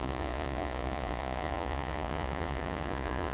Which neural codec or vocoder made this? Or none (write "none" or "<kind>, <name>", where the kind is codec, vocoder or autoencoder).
vocoder, Vocos